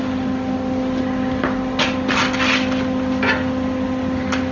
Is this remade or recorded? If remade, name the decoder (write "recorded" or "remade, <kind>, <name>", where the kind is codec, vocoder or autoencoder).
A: recorded